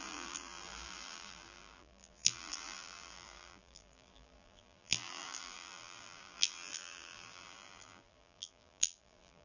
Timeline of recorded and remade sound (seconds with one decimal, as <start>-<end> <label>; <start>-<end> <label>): 0.0-9.4 remade